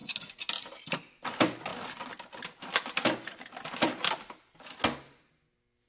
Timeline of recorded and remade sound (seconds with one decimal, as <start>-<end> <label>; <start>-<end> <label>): 0.0-5.9 recorded